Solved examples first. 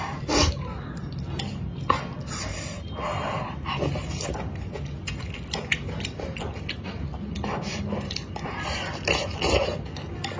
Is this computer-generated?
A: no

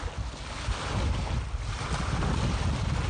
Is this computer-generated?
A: no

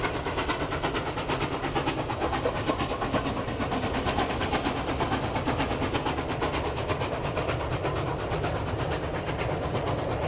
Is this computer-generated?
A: no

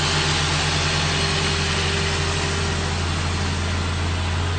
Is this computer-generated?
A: no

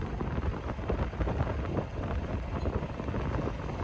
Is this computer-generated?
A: no